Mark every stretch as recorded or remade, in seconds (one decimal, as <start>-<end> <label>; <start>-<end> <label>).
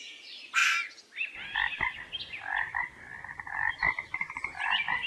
0.0-5.1 recorded